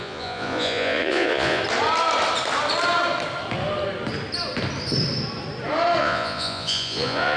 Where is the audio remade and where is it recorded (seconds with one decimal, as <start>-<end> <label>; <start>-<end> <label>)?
0.0-1.6 remade; 1.6-6.0 recorded; 6.0-7.4 remade